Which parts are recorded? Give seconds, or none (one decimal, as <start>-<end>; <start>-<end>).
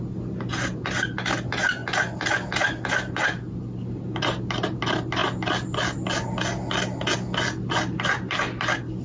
0.0-9.0